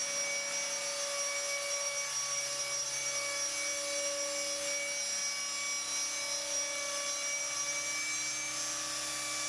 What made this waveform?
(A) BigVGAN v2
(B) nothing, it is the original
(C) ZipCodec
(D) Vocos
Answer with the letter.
B